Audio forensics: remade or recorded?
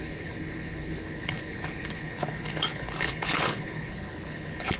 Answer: remade